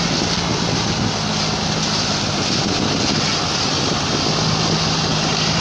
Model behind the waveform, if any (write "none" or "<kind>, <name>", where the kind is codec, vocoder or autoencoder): none